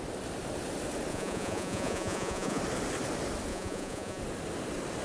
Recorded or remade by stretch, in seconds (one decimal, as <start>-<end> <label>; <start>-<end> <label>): 0.0-1.1 recorded; 1.1-2.6 remade; 2.6-3.5 recorded; 3.5-4.2 remade; 4.2-5.0 recorded